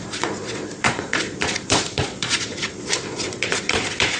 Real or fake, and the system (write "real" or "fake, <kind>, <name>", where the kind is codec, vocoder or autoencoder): fake, vocoder, Vocos